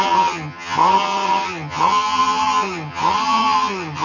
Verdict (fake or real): fake